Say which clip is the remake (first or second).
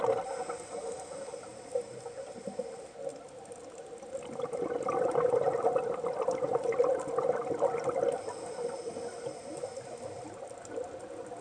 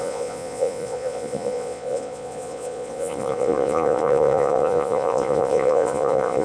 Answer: second